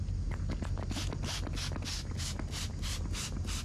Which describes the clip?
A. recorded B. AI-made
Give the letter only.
A